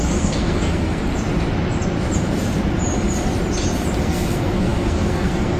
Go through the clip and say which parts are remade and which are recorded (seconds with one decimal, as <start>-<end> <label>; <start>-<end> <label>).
0.0-1.0 remade; 1.0-4.0 recorded; 4.0-5.6 remade

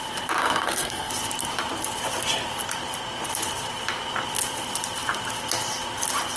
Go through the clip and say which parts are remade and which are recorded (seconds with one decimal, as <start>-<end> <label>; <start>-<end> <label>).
0.0-0.4 recorded; 0.4-1.1 remade; 1.1-6.4 recorded